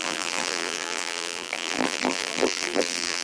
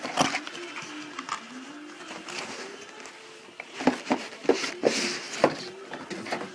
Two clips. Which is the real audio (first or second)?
second